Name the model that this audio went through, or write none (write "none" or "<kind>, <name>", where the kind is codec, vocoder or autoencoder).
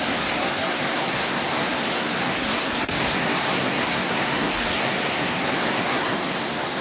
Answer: codec, SNAC